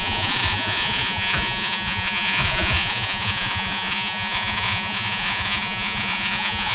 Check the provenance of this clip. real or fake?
fake